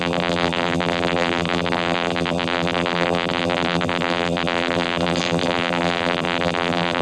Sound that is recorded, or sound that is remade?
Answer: remade